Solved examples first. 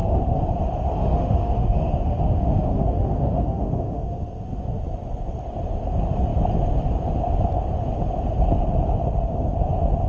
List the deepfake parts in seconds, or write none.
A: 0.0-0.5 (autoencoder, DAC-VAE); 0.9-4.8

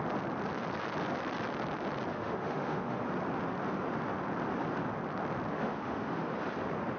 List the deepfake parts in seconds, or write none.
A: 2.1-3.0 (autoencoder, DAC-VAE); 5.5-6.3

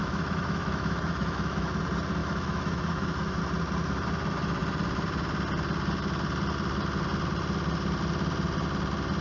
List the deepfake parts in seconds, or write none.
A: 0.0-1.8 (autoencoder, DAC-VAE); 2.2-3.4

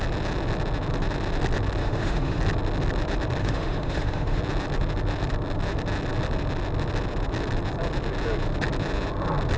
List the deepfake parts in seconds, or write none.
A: 1.8-2.4 (autoencoder, DAC-VAE); 3.4-4.4

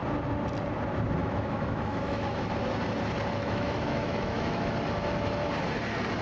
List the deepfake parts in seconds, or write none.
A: 1.2-2.5 (autoencoder, DAC-VAE); 3.4-4.7

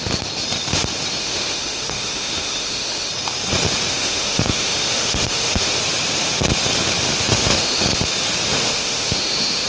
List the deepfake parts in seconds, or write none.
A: 1.2-3.1 (autoencoder, DAC-VAE); 3.9-5.8; 7.3-7.8; 8.6-9.7

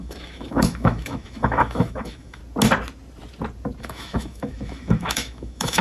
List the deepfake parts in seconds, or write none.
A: 0.0-2.4 (autoencoder, DAC-VAE); 3.8-5.8

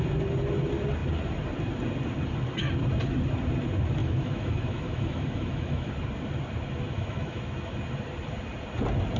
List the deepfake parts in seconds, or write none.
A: 4.0-5.9 (autoencoder, DAC-VAE); 6.8-7.4